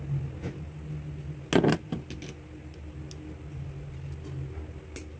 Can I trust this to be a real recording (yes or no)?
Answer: yes